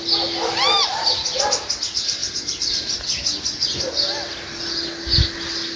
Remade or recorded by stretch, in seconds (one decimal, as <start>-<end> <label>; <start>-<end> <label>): 0.0-5.8 recorded